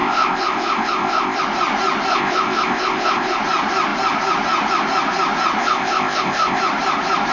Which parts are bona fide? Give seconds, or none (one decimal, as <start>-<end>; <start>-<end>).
1.4-2.1; 3.4-5.6; 6.6-7.3